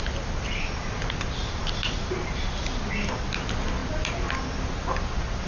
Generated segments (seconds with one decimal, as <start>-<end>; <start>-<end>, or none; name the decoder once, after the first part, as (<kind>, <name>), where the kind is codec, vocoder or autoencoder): none